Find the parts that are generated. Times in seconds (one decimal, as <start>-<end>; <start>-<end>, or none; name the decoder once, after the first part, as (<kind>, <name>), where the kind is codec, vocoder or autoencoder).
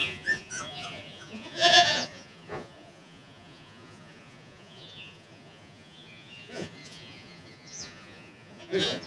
0.0-9.1 (vocoder, Vocos)